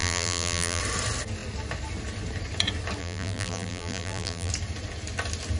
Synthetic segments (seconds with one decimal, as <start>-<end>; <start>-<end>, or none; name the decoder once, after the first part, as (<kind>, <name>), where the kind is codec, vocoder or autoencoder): 0.0-0.8 (vocoder, BigVGAN v2); 3.0-4.5